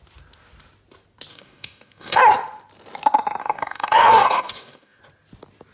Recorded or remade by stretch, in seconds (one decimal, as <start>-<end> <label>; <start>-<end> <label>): 0.0-1.3 recorded; 1.3-2.2 remade; 2.2-3.4 recorded; 3.4-5.0 remade; 5.0-5.7 recorded